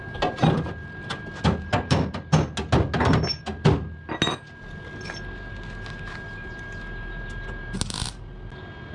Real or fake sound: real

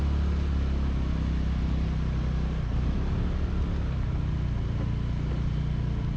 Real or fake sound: real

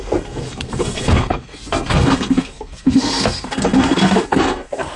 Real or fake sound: fake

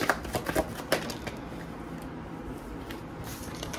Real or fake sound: real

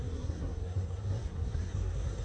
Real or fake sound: fake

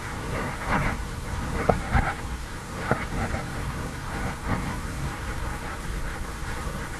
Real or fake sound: fake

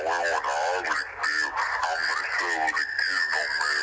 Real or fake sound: real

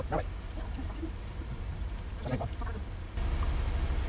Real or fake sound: real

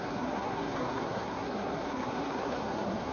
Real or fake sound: fake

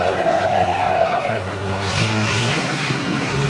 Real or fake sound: fake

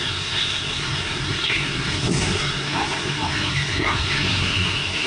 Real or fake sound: fake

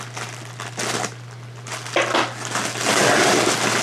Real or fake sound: real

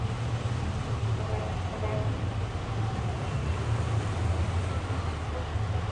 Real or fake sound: real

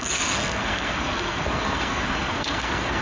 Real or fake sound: fake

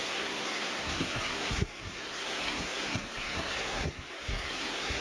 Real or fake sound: fake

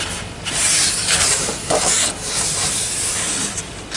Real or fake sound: real